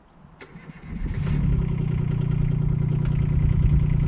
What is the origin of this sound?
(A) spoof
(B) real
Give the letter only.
B